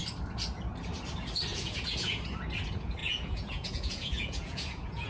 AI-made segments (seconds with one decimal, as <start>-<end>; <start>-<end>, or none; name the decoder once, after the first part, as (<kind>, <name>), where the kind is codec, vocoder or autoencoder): 1.5-2.2 (vocoder, Vocos); 3.0-5.1